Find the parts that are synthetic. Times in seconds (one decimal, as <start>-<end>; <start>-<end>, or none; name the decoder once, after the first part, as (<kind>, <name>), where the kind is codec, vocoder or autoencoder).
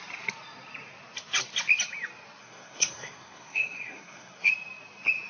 2.4-4.5 (codec, SNAC)